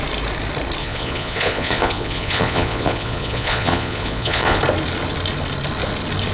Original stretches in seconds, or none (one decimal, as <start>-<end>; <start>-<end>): 0.0-0.8; 4.6-6.3